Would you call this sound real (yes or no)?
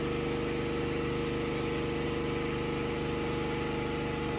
yes